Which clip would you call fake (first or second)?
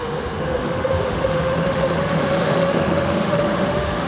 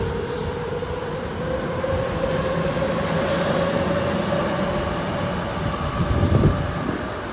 first